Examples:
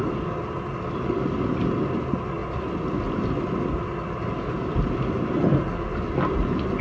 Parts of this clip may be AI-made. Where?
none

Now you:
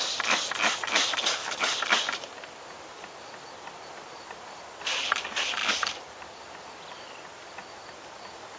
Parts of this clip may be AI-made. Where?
none

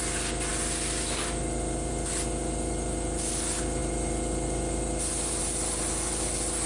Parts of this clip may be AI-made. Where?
none

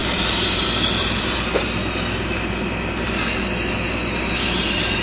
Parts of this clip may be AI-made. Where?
0.0-1.2 (vocoder, BigVGAN v2)

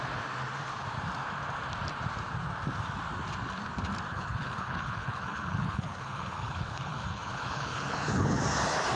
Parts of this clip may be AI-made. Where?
4.1-8.4 (codec, HILCodec)

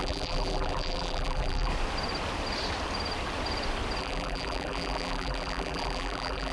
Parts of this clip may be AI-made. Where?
0.0-1.7 (vocoder, BigVGAN v2); 4.0-6.5

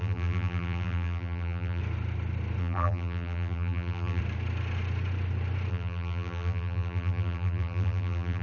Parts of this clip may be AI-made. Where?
0.0-1.8 (vocoder, BigVGAN v2); 2.6-4.2; 5.7-8.4